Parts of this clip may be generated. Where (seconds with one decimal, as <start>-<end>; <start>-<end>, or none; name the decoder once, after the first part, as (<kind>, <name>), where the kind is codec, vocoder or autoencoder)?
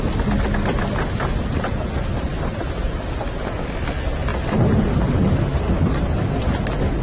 none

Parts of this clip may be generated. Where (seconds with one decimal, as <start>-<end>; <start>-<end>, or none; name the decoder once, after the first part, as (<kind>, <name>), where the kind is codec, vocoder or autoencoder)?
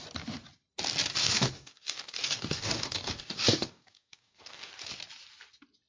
1.2-4.7 (codec, DAC)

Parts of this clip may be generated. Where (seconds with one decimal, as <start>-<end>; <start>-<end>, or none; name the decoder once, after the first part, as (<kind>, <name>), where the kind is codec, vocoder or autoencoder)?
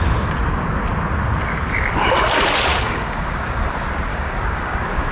2.7-3.6 (codec, DAC); 4.1-5.1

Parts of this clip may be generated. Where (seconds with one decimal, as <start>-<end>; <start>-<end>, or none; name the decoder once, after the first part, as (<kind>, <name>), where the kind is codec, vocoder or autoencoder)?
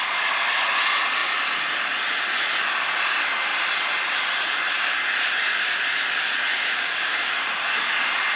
6.5-7.3 (codec, DAC)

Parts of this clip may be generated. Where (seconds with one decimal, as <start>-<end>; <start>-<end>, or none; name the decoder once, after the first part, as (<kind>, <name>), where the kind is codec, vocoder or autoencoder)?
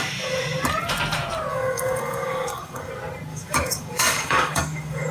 1.5-2.9 (codec, DAC); 3.3-5.1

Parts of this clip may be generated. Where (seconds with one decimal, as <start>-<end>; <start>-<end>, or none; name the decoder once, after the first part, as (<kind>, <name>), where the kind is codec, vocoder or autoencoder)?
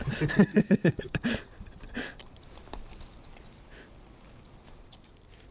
0.5-1.3 (codec, DAC)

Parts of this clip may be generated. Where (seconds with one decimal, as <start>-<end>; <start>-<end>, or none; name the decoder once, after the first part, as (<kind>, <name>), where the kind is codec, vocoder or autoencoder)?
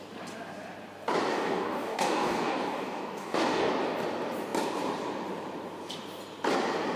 1.3-3.7 (codec, DAC)